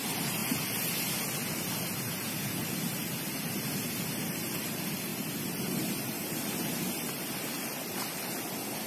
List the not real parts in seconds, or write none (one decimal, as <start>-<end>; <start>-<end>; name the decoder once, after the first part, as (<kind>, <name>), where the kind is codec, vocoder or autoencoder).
none

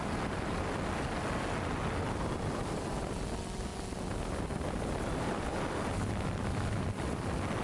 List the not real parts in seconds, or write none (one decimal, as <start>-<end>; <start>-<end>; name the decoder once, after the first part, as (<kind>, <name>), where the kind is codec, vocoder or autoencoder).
none

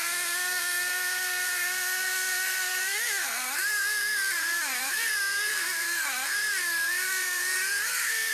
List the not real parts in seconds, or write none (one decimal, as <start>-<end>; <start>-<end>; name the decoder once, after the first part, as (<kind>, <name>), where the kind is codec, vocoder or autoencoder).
0.0-8.3 (codec, SNAC)

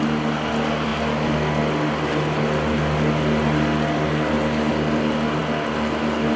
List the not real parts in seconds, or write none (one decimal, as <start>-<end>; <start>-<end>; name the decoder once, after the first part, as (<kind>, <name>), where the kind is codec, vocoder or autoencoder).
none

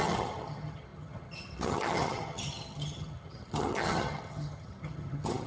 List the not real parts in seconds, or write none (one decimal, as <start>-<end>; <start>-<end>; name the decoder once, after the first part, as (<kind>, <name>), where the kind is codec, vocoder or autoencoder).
0.0-5.5 (vocoder, HiFi-GAN)

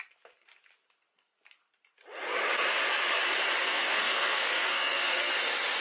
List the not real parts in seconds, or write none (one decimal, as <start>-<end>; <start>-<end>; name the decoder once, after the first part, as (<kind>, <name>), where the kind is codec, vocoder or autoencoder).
3.6-5.3 (codec, SNAC)

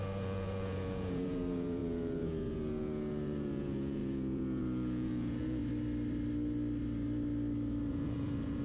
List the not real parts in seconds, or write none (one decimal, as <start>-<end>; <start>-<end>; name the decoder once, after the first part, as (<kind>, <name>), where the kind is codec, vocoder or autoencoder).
0.0-5.6 (vocoder, Vocos); 7.9-8.6